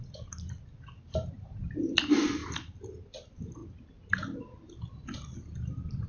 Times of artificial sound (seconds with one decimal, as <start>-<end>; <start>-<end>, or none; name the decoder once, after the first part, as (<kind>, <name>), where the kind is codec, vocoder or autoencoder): 0.0-3.6 (vocoder, BigVGAN v2); 4.9-6.1